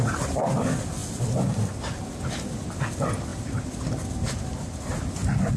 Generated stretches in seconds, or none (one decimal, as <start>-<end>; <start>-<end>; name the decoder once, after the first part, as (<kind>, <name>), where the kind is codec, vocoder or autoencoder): none